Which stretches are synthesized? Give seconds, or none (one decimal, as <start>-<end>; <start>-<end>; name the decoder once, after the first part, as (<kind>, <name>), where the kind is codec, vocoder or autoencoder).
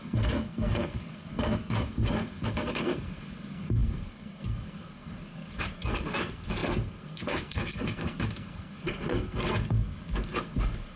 0.0-11.0 (codec, SNAC)